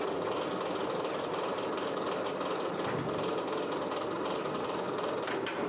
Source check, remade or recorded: recorded